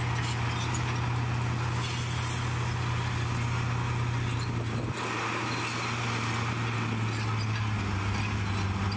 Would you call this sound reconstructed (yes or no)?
no